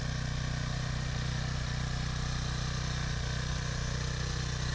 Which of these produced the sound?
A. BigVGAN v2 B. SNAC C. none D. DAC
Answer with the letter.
C